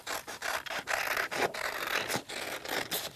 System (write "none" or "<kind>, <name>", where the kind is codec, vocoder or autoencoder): none